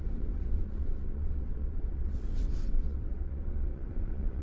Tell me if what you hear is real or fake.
fake